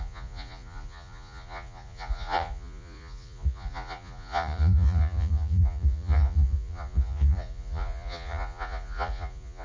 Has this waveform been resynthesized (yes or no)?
yes